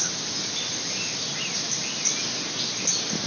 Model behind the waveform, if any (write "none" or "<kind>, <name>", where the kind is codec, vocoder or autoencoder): none